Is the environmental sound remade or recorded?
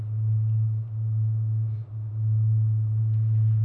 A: recorded